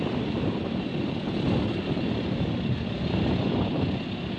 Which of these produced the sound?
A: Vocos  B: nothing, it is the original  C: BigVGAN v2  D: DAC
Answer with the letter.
C